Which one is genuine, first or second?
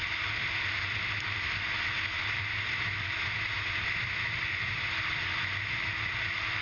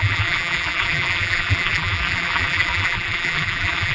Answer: first